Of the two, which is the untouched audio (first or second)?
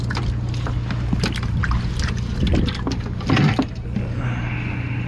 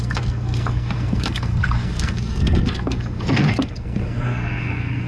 first